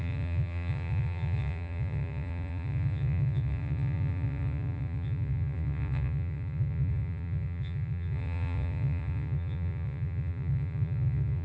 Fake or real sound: fake